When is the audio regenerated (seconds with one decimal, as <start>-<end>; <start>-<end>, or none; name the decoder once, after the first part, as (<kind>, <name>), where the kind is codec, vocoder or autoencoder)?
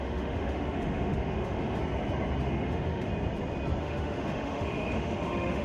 0.0-1.8 (autoencoder, DAC-VAE); 2.5-3.1; 3.8-5.6